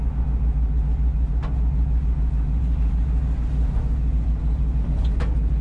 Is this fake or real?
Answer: real